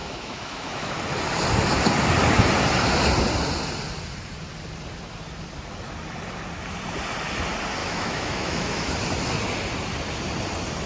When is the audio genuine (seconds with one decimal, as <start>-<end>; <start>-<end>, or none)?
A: 0.9-7.8; 8.9-10.9